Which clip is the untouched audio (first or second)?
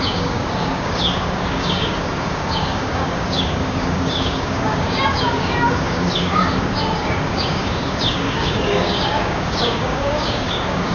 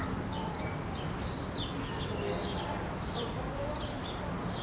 second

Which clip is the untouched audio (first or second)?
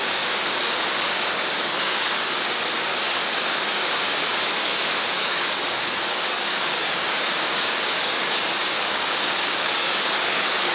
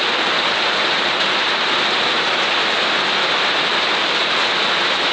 second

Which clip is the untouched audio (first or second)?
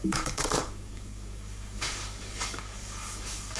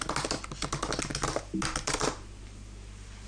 second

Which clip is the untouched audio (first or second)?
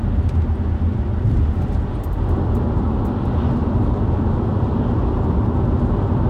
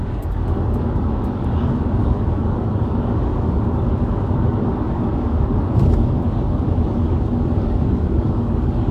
first